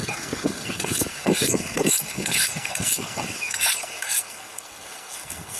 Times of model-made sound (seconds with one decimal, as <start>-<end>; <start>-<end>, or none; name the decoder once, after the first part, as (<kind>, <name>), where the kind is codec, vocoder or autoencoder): 0.0-5.6 (codec, SNAC)